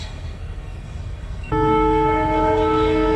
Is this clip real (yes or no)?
no